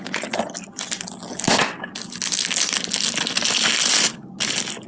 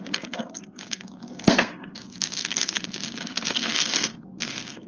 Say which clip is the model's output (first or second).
second